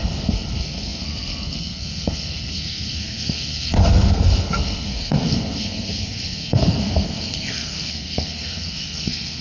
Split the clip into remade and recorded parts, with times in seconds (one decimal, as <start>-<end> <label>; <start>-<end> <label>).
0.0-9.4 remade